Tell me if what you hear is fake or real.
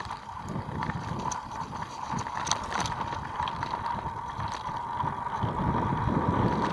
real